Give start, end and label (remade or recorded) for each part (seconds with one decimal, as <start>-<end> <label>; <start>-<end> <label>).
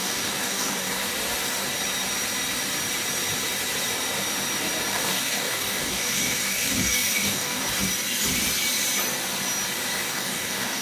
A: 0.0-1.1 remade; 1.1-4.9 recorded; 4.9-7.6 remade; 7.6-9.9 recorded; 9.9-10.8 remade